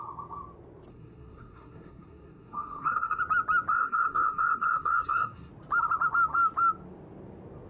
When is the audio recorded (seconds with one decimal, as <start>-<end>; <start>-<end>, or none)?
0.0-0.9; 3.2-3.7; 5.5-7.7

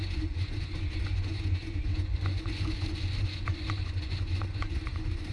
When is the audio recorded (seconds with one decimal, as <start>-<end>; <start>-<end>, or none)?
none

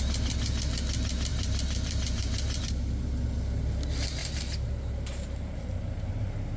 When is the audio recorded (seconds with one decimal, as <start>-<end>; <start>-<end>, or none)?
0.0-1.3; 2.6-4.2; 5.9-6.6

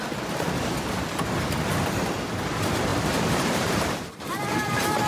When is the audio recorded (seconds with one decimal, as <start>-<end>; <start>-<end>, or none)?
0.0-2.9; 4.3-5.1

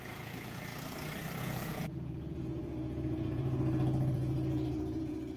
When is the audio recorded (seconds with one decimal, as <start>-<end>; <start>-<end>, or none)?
0.7-1.4

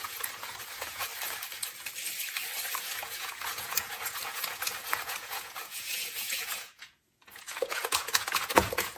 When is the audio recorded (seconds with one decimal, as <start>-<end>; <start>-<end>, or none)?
1.1-2.8

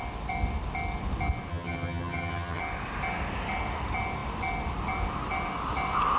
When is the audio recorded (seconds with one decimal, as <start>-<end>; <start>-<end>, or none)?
0.0-1.5; 2.6-6.2

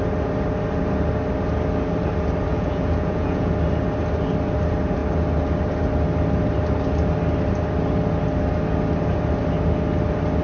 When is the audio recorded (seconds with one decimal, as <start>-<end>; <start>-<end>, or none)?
0.0-2.5; 3.5-10.4